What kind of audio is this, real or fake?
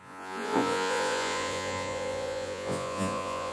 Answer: fake